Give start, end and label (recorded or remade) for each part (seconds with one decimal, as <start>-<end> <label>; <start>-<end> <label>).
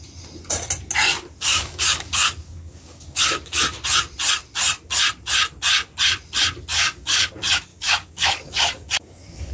0.0-1.5 recorded; 1.5-3.6 remade; 3.6-6.7 recorded; 6.7-7.3 remade; 7.3-7.7 recorded; 7.7-9.5 remade